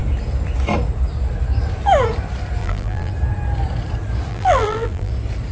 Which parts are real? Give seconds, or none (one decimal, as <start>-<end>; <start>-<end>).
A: 0.0-2.6; 3.1-4.3; 5.1-5.5